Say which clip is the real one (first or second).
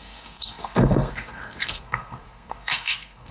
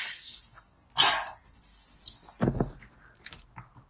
second